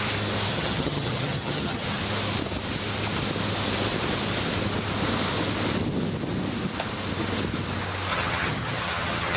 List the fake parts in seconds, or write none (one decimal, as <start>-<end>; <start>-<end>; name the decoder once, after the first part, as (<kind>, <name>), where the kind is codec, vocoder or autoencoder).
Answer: 0.5-2.0 (vocoder, HiFi-GAN); 8.1-9.4